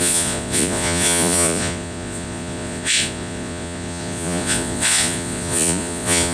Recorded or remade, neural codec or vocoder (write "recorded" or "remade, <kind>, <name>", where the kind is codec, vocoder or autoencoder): remade, vocoder, Vocos